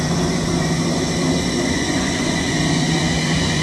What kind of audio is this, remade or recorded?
remade